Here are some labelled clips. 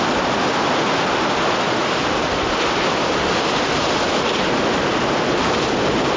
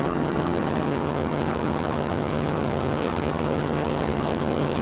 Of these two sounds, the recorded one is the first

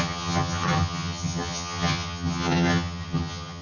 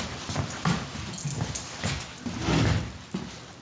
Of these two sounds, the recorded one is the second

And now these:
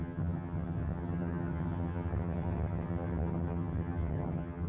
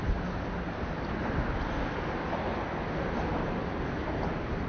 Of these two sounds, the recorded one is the second